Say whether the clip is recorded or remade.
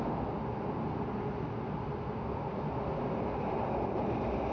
recorded